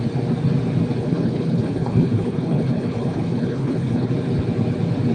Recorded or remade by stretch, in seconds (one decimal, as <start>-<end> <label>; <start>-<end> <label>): 0.0-1.0 recorded; 1.0-4.1 remade; 4.1-5.1 recorded